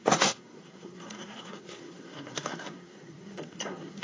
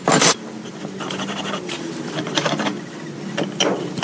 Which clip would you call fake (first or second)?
first